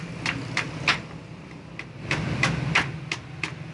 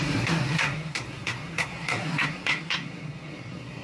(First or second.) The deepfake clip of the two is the second